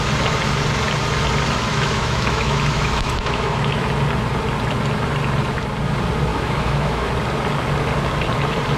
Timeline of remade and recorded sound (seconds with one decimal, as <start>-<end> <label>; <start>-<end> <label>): 0.0-1.7 recorded; 1.7-3.9 remade; 3.9-6.3 recorded; 6.3-7.1 remade; 7.1-8.8 recorded